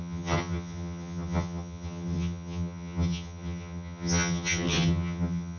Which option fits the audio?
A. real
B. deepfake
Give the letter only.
B